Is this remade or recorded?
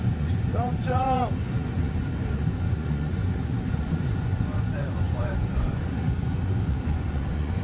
remade